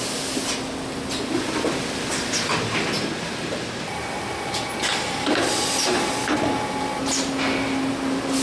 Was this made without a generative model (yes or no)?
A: yes